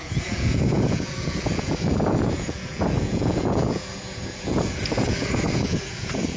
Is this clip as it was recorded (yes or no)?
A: no